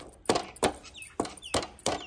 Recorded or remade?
recorded